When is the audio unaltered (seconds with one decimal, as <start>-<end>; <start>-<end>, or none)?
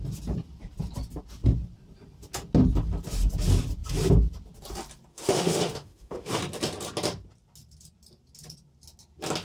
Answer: 0.0-5.1; 6.4-9.4